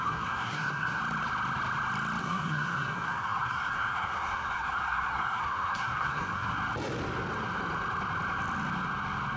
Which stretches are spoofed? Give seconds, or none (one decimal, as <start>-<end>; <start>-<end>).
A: 0.0-1.0; 2.2-6.5